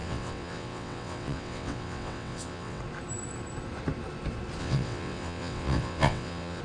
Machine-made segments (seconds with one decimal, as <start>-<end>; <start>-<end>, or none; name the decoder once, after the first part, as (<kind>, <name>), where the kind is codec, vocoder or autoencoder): 0.0-2.8 (vocoder, WaveNeXt); 4.6-6.6